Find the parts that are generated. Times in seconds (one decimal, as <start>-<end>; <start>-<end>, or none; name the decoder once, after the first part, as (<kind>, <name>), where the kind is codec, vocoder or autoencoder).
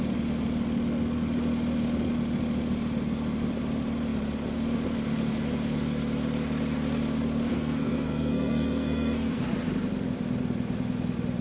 7.5-9.4 (codec, SNAC)